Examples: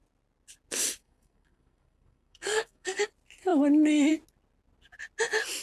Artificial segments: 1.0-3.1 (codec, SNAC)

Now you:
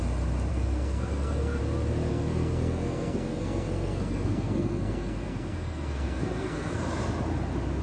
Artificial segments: 0.5-1.6 (codec, SNAC); 2.1-6.8

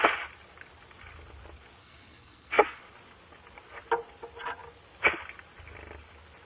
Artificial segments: 1.8-2.8 (codec, SNAC)

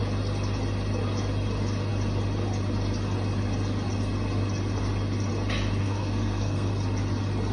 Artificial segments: 5.8-6.7 (codec, SNAC)

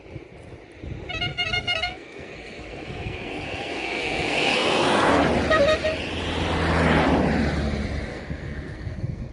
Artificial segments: 1.3-5.2 (codec, SNAC); 8.1-9.3

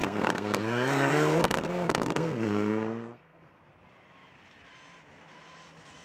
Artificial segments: 0.0-3.6 (codec, SNAC)